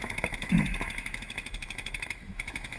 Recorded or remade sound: remade